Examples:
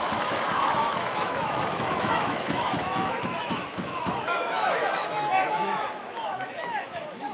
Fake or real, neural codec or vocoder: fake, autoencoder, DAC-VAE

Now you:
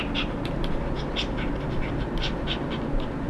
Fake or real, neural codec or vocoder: real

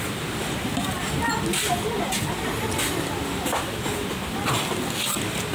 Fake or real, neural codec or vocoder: real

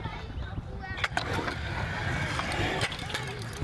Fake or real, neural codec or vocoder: real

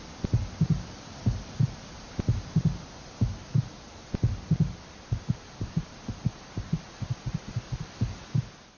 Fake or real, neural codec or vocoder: real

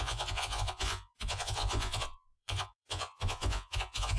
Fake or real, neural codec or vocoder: fake, vocoder, Vocos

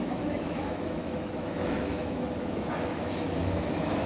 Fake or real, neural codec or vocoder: fake, autoencoder, DAC-VAE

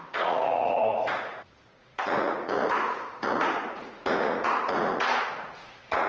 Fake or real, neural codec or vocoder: fake, vocoder, Vocos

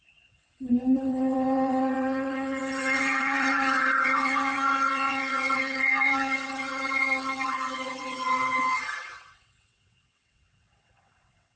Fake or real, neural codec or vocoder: fake, vocoder, WaveNeXt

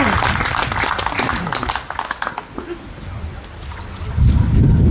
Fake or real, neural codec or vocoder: real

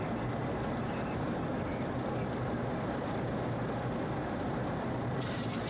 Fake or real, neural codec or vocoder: fake, vocoder, BigVGAN v2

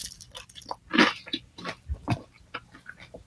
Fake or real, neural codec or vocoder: real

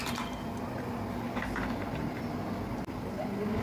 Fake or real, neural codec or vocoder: real